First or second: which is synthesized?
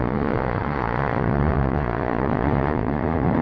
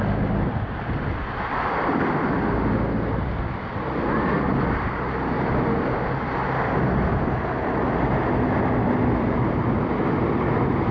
first